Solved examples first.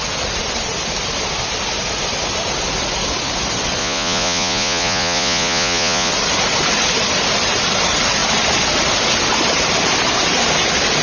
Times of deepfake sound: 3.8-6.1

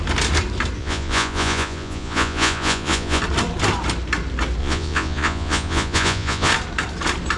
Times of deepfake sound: 0.8-3.2; 4.6-6.5

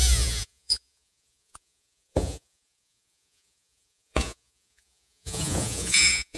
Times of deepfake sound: 0.0-6.4

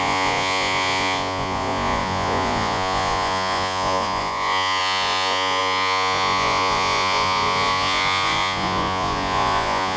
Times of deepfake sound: 0.0-10.0

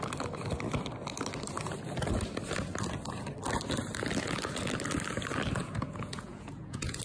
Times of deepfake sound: 5.6-7.0